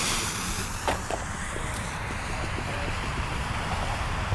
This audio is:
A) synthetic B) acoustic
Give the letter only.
A